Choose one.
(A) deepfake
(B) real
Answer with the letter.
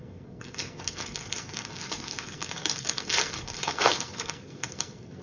A